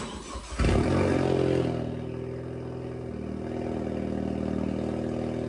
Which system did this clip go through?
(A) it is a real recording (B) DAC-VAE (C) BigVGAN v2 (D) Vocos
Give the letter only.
A